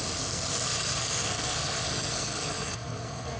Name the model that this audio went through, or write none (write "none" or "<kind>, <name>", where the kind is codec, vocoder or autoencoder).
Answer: codec, SNAC